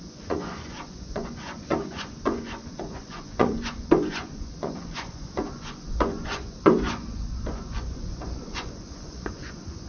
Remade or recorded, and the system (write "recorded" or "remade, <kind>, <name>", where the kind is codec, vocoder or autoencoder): remade, vocoder, Vocos